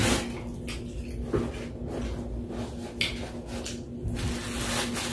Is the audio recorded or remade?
recorded